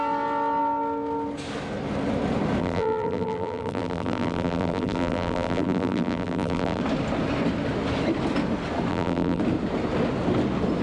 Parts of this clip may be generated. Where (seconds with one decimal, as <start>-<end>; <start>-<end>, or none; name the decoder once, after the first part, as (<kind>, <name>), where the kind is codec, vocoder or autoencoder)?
2.6-6.8 (vocoder, BigVGAN v2); 8.9-9.4